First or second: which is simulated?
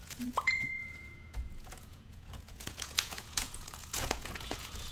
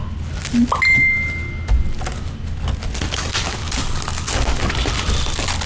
first